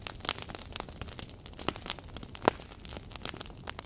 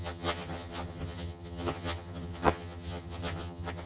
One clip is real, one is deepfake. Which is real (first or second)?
first